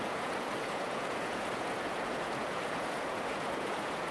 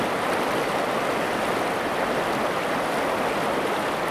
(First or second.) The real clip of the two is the second